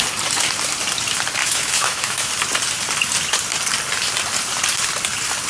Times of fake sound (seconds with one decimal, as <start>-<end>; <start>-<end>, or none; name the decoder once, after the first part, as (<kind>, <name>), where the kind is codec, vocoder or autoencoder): 1.4-2.3 (autoencoder, DAC-VAE)